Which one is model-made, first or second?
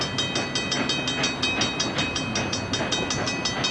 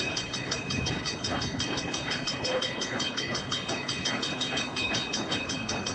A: second